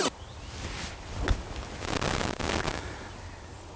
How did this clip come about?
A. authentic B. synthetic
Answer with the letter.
A